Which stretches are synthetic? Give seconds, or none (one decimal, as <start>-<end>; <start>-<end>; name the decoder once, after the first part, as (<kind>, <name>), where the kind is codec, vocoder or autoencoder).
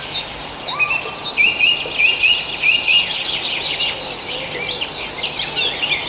none